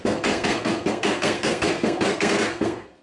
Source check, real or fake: fake